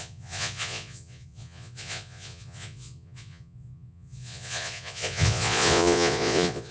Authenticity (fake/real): fake